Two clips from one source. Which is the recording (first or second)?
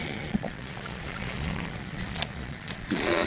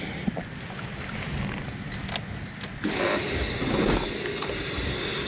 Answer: second